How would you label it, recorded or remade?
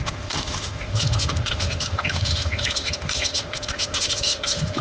remade